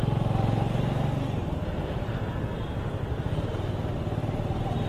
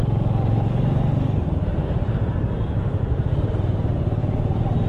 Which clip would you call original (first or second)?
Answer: first